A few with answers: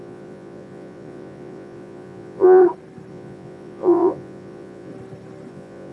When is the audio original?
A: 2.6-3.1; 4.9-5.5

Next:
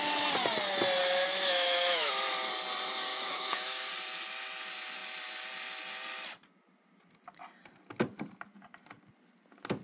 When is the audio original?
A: 0.0-1.0; 2.1-3.1; 3.9-9.8

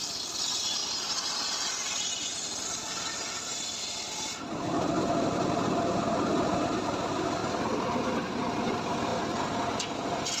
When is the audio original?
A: 0.0-10.4

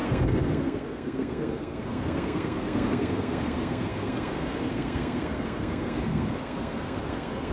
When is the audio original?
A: none

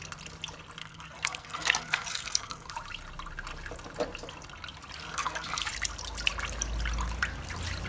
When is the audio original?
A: 0.0-0.8; 2.7-5.0; 5.7-7.9